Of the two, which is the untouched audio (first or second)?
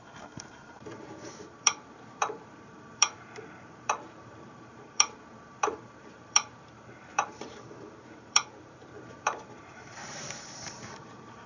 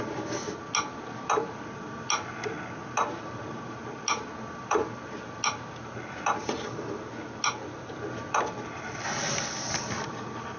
second